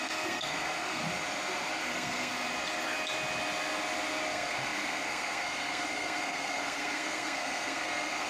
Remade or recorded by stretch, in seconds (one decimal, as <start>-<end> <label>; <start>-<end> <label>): 0.0-1.0 remade; 1.0-1.9 recorded; 1.9-2.3 remade; 2.3-4.3 recorded; 4.3-8.3 remade